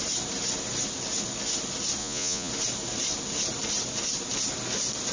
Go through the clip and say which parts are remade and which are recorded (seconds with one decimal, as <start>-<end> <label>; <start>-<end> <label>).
0.0-2.0 recorded; 2.0-2.5 remade; 2.5-5.1 recorded